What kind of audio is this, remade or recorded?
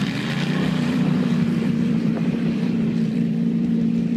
remade